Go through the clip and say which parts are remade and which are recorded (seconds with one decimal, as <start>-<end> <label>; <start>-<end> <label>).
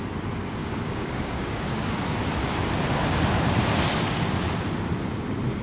0.0-0.6 recorded; 0.6-1.7 remade; 1.7-5.6 recorded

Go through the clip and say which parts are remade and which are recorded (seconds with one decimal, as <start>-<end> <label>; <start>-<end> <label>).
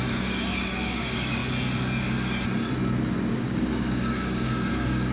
0.0-1.4 remade; 1.4-3.3 recorded; 3.3-5.1 remade